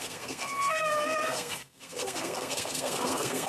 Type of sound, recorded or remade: remade